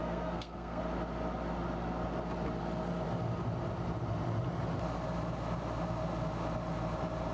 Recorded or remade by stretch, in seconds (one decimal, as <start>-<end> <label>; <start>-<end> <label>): 0.0-0.8 remade; 0.8-7.3 recorded